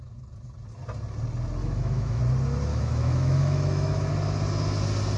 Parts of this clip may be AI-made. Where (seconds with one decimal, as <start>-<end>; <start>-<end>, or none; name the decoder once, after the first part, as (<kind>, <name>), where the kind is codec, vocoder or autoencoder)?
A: 1.6-2.2 (autoencoder, DAC-VAE); 2.7-4.1